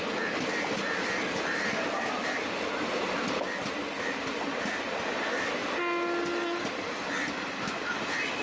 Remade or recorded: recorded